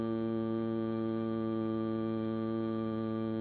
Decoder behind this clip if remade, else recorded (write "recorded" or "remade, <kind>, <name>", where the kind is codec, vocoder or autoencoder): recorded